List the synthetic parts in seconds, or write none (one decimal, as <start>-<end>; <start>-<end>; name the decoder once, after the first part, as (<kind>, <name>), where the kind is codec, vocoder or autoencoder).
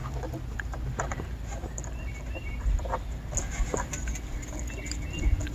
0.0-3.3 (vocoder, BigVGAN v2)